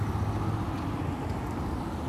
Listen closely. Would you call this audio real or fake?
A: real